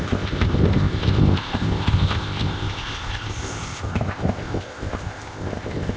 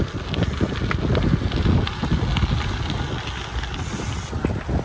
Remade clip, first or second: first